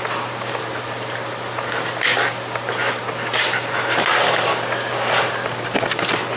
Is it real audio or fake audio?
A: real